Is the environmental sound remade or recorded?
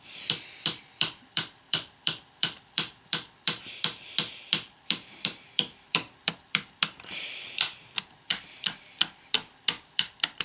remade